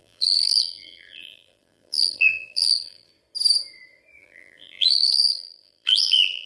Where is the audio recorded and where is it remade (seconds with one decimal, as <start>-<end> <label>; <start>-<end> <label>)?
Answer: 0.0-3.1 remade; 3.1-4.2 recorded; 4.2-6.5 remade

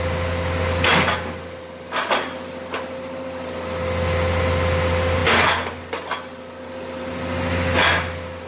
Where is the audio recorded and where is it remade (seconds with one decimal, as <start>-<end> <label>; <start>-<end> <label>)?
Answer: 0.0-8.5 recorded

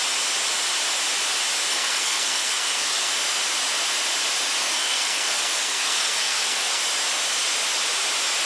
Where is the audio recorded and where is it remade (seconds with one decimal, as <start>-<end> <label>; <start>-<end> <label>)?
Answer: 0.0-1.7 recorded; 1.7-3.1 remade; 3.1-4.6 recorded; 4.6-6.8 remade; 6.8-8.5 recorded

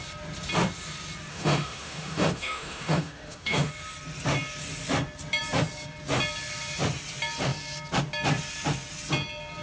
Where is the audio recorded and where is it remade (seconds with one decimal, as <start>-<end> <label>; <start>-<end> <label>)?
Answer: 0.0-1.3 recorded; 1.3-3.7 remade; 3.7-9.6 recorded

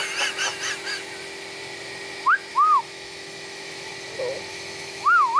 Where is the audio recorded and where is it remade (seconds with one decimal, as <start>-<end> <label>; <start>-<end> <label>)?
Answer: 0.0-2.5 recorded; 2.5-3.9 remade; 3.9-4.5 recorded; 4.5-5.4 remade

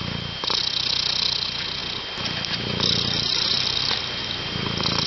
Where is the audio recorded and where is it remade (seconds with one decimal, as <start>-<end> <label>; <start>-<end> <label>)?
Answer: 0.0-5.1 recorded